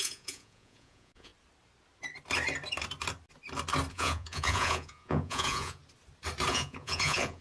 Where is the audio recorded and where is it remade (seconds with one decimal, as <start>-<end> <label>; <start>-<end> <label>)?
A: 0.0-1.3 remade; 1.3-3.9 recorded; 3.9-5.8 remade; 5.8-6.5 recorded; 6.5-7.4 remade